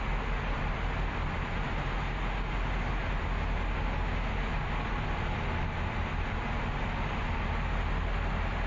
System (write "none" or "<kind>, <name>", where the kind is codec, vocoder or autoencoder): none